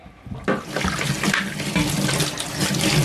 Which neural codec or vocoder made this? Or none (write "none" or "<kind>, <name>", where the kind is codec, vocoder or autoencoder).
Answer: none